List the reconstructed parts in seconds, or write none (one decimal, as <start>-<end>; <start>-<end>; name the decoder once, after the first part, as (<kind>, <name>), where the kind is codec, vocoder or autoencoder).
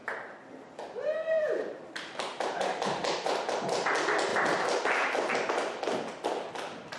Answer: 1.4-3.9 (vocoder, BigVGAN v2)